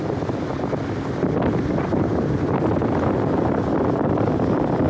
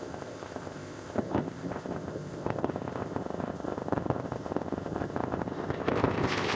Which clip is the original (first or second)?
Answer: first